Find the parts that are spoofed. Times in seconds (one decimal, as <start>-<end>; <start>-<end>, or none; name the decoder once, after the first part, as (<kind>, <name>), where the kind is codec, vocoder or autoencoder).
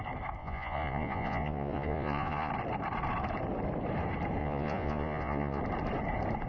0.4-2.5 (vocoder, Vocos); 4.4-5.6